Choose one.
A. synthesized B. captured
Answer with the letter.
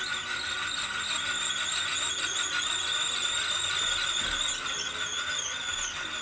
B